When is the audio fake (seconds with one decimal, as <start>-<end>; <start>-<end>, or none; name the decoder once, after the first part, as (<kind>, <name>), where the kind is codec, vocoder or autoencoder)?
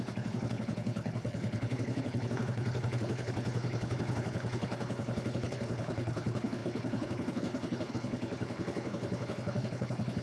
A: 0.0-10.2 (codec, HILCodec)